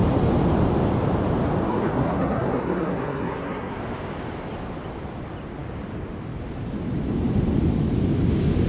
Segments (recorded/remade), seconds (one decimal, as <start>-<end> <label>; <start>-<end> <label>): 0.0-1.7 recorded; 1.7-3.8 remade; 3.8-8.7 recorded